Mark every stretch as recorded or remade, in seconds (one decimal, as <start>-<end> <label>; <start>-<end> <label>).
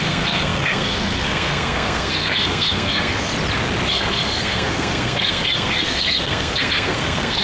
0.0-3.3 remade; 3.3-3.9 recorded; 3.9-7.4 remade